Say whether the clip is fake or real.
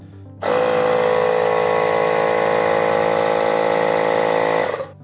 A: real